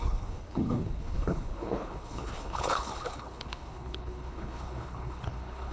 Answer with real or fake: fake